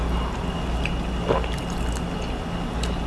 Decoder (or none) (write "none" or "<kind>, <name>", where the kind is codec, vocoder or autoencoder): none